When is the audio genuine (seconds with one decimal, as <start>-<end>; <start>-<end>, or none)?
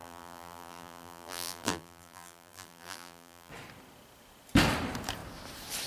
3.5-5.9